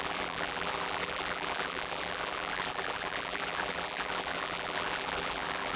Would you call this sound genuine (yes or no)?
no